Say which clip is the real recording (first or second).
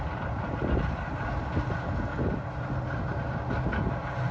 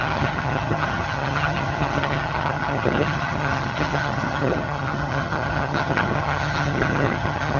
first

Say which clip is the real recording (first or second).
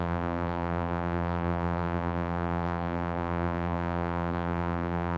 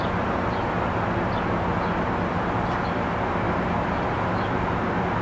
second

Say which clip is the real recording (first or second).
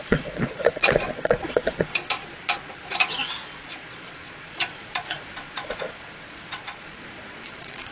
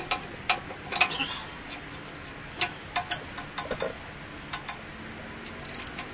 second